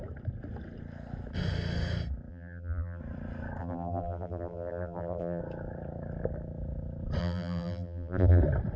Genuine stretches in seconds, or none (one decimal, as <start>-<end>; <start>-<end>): 0.0-2.3; 3.0-3.6; 5.4-7.2; 8.4-8.8